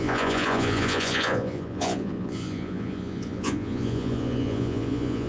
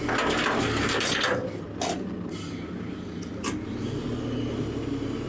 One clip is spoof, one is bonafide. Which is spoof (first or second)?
first